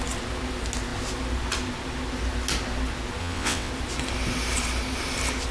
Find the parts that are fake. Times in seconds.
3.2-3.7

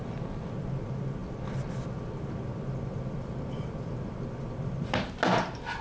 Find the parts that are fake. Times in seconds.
none

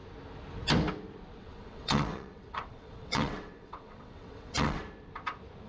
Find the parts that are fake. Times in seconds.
1.4-4.8

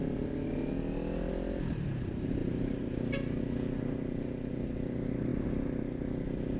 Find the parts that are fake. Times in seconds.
none

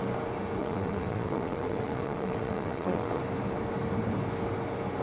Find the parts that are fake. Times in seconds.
0.6-3.2

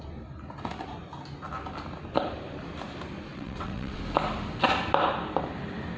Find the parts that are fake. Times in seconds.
3.3-4.0